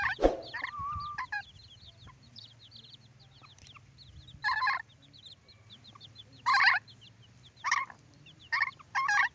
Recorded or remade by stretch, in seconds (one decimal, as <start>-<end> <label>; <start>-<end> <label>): 0.0-9.3 remade